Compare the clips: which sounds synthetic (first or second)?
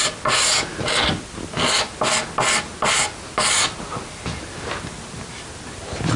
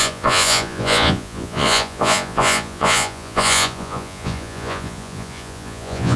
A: second